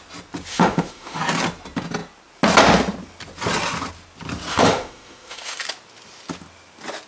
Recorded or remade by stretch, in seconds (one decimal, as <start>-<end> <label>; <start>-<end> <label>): 0.0-0.5 recorded; 0.5-1.2 remade; 1.2-4.5 recorded; 4.5-5.6 remade; 5.6-7.1 recorded